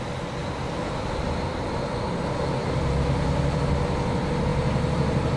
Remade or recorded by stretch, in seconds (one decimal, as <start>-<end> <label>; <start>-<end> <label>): 0.0-0.4 recorded; 0.4-3.6 remade; 3.6-5.4 recorded